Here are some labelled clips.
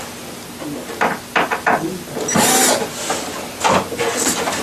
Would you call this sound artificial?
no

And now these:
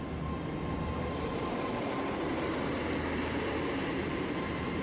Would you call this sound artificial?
yes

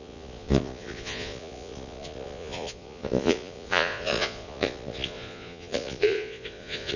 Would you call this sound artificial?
yes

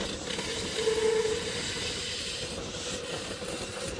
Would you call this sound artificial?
no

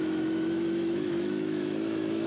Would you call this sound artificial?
yes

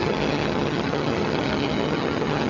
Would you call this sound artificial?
yes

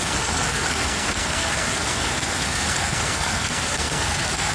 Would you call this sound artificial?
yes